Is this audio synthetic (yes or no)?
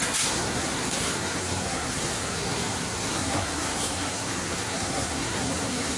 yes